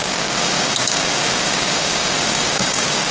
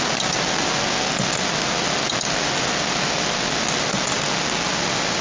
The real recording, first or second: second